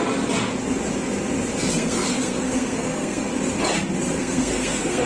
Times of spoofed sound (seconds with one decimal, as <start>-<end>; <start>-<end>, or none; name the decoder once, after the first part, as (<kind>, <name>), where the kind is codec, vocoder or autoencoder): 1.6-3.3 (codec, SNAC); 4.2-5.1

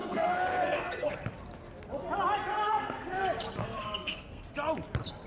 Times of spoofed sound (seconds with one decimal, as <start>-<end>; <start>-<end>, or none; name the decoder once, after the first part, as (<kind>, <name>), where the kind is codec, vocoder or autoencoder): 0.0-1.1 (codec, SNAC); 2.5-3.2; 3.6-4.5

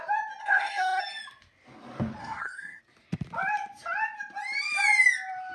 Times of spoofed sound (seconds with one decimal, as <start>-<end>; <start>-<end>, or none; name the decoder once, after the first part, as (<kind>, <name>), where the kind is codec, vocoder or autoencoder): 0.4-1.0 (codec, SNAC); 2.2-2.8